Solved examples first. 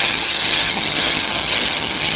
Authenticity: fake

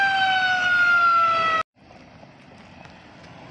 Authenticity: real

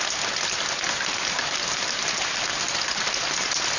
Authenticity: real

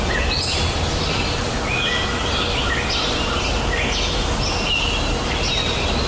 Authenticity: real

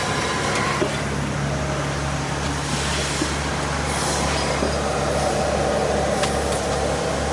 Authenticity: real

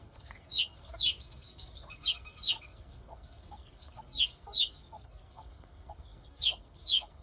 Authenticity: fake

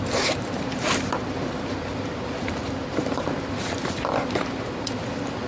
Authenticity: fake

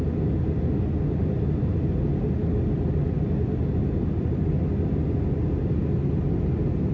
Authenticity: real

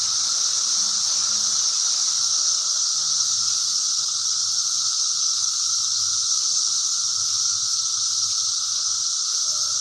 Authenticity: real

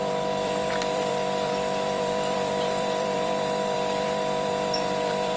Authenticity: fake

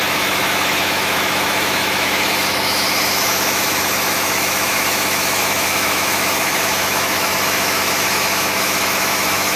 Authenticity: fake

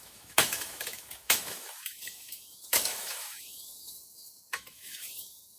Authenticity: fake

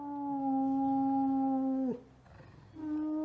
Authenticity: real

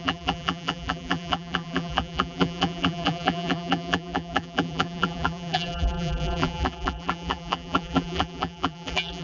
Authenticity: fake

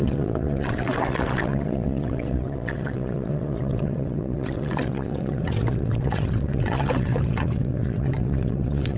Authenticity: fake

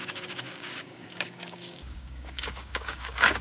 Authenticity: fake